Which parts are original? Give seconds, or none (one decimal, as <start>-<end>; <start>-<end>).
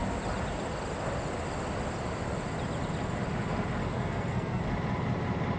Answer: 0.0-3.8; 4.6-5.6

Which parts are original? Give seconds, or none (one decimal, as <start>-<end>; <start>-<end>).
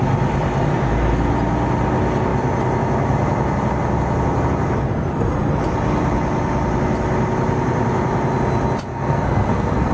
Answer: 0.0-0.7; 1.2-8.9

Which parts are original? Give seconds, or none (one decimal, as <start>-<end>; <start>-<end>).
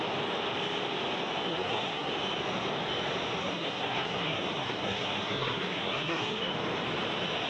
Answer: 0.0-1.5; 2.1-3.4; 6.5-7.5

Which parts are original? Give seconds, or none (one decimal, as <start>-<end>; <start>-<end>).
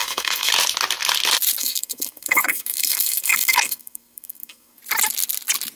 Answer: 0.5-1.6; 4.8-5.8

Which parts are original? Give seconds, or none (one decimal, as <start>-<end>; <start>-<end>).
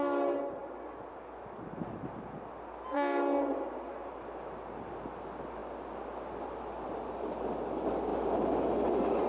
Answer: 0.0-9.3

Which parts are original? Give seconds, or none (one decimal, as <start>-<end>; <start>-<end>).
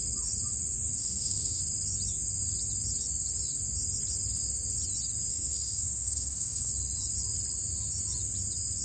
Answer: 0.0-1.0; 1.6-5.3; 6.7-8.8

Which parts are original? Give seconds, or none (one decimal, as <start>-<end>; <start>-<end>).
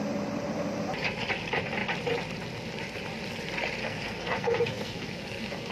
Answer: 0.0-3.8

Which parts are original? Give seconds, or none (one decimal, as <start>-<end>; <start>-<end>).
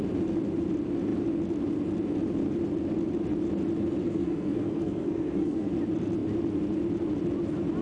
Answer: 0.0-4.0; 5.7-7.8